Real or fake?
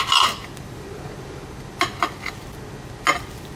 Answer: real